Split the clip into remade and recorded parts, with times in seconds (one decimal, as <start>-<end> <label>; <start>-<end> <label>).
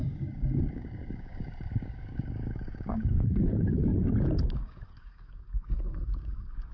0.0-3.9 remade; 3.9-4.4 recorded; 4.4-6.7 remade